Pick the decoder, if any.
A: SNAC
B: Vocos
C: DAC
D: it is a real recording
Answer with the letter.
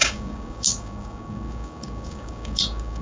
C